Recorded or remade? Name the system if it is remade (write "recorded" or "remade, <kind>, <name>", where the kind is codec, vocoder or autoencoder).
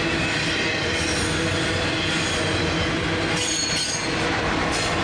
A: recorded